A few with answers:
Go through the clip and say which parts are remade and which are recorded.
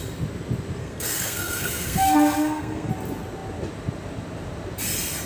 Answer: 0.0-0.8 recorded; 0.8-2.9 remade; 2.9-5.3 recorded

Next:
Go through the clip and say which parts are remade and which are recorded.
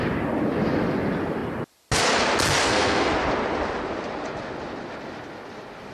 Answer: 0.0-2.6 recorded; 2.6-3.1 remade; 3.1-5.9 recorded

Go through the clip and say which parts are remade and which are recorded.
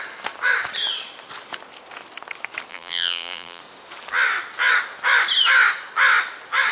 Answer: 0.0-2.7 recorded; 2.7-3.6 remade; 3.6-6.7 recorded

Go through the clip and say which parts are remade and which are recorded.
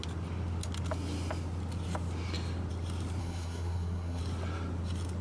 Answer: 0.0-3.2 recorded; 3.2-4.2 remade; 4.2-5.2 recorded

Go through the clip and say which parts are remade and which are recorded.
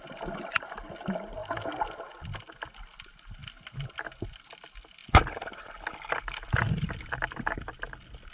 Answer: 0.0-8.3 recorded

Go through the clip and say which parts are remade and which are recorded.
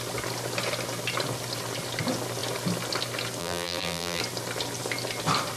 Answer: 0.0-3.4 recorded; 3.4-4.2 remade; 4.2-5.6 recorded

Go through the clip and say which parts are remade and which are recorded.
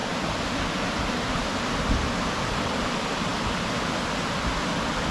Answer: 0.0-5.1 recorded